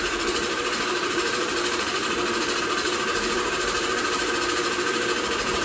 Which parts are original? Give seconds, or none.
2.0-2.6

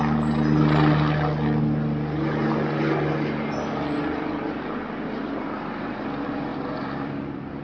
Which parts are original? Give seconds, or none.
0.0-6.5